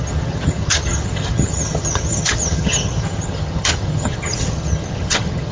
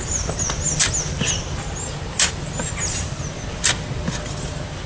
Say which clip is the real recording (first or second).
second